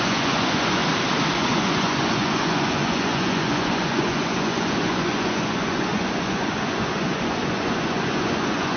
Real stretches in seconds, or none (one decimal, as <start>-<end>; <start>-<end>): 0.8-1.4

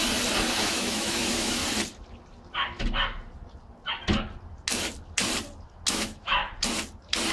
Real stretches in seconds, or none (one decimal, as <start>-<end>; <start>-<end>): 0.0-0.6; 1.6-5.9; 6.4-7.3

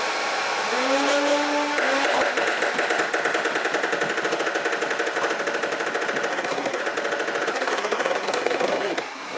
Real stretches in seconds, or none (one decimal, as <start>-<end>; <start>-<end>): 0.0-6.3; 6.8-7.5

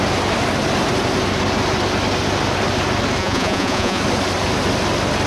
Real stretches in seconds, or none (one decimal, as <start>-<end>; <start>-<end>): 0.0-3.2; 4.0-5.3

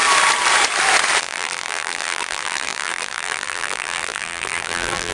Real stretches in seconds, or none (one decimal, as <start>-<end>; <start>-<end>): 0.0-1.2